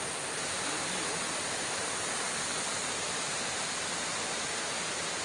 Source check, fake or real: real